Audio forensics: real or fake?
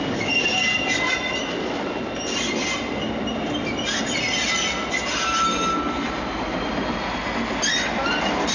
real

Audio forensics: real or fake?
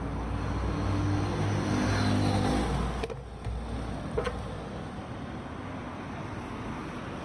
real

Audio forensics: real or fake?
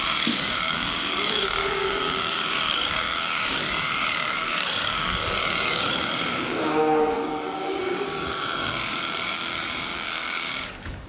fake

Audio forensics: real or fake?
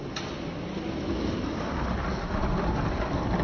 real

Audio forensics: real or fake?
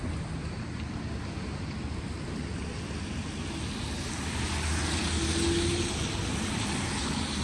real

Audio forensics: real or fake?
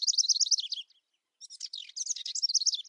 real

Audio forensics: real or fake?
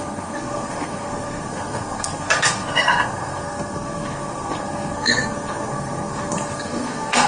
fake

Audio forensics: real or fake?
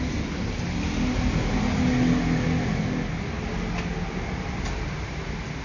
real